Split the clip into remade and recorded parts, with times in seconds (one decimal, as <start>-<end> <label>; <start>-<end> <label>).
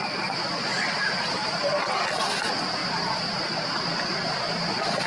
0.0-1.0 recorded; 1.0-2.0 remade; 2.0-2.8 recorded; 2.8-5.1 remade